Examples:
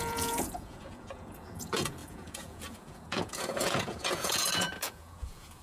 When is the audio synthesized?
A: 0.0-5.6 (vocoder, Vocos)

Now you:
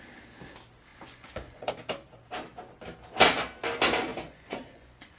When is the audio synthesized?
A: 0.9-1.7 (vocoder, Vocos); 4.1-5.2

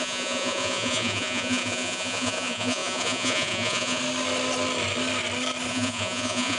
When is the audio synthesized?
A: 0.0-4.0 (vocoder, Vocos); 5.7-6.6

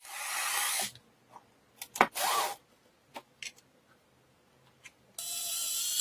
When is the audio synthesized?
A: none

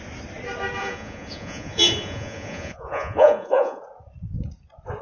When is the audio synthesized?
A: 0.8-3.8 (vocoder, Vocos)